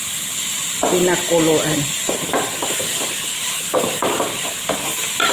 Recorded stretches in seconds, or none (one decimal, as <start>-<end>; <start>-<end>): 0.0-0.6; 2.9-3.4; 4.5-5.3